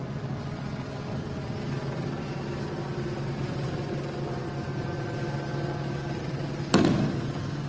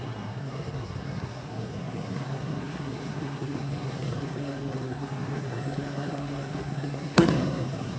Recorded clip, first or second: first